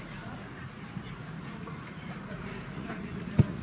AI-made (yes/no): yes